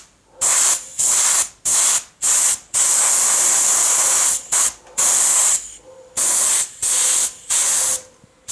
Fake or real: real